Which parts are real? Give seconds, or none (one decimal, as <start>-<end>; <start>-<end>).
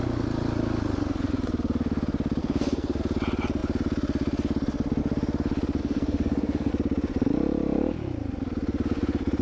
0.0-2.4; 3.0-5.8; 6.7-9.4